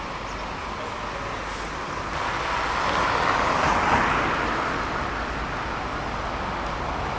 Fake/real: real